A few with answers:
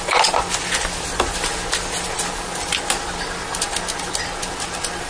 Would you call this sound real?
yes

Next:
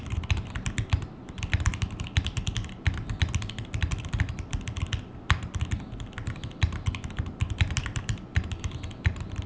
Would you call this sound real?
yes